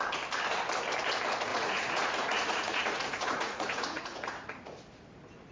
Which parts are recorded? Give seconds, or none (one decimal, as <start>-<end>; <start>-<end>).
0.0-1.5; 4.8-5.5